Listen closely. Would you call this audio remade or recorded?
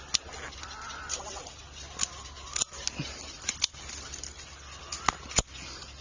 recorded